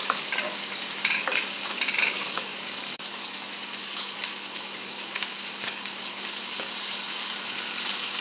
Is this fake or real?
fake